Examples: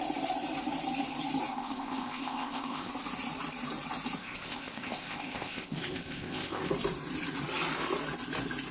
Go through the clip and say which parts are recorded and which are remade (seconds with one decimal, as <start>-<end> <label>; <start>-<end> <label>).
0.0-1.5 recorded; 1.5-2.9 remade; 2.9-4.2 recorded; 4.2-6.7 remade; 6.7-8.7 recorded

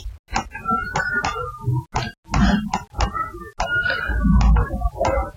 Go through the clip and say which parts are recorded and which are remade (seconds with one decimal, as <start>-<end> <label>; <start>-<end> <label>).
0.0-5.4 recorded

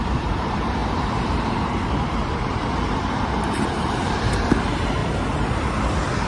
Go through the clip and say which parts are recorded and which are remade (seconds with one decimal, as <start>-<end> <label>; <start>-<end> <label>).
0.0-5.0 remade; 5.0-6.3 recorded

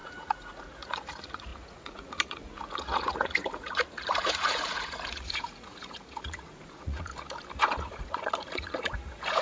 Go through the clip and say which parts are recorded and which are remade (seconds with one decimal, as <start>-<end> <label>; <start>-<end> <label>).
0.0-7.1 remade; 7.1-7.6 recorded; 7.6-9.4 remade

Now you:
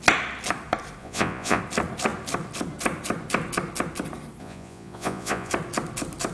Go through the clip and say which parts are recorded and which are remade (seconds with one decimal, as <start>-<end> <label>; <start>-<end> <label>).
0.0-1.0 recorded; 1.0-1.6 remade; 1.6-4.4 recorded; 4.4-5.5 remade; 5.5-6.3 recorded

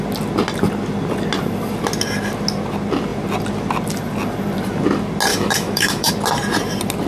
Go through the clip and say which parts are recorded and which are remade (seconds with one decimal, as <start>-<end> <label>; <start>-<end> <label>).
0.0-5.3 recorded; 5.3-6.1 remade; 6.1-7.1 recorded